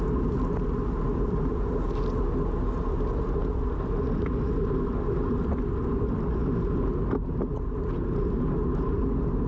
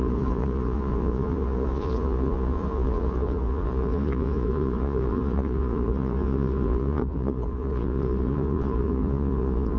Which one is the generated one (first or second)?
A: second